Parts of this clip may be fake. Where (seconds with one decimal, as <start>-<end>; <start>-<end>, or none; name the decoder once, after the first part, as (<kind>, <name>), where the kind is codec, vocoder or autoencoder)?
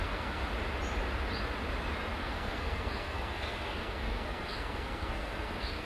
0.0-0.4 (codec, SNAC); 2.2-5.8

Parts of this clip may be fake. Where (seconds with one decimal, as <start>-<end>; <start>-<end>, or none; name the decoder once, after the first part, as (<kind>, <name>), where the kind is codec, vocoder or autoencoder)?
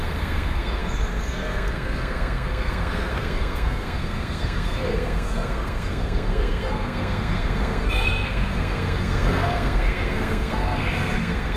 0.0-11.6 (codec, SNAC)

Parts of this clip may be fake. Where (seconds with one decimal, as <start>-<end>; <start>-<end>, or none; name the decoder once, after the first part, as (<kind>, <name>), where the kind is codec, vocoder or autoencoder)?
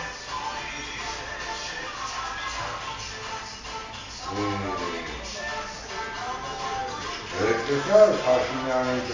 none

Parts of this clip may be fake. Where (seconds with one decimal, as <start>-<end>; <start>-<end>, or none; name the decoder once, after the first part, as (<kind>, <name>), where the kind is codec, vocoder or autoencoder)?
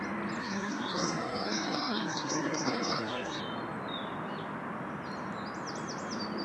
0.4-3.4 (codec, SNAC)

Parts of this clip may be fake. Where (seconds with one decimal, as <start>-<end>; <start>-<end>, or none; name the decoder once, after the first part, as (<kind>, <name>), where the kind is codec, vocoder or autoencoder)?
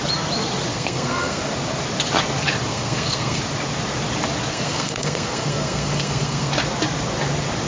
0.7-1.4 (codec, SNAC); 2.7-3.4; 4.5-6.5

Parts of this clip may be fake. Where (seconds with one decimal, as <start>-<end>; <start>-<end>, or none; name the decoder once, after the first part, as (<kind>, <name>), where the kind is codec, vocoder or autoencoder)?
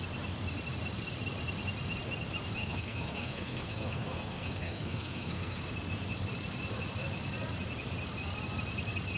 2.6-5.6 (codec, SNAC)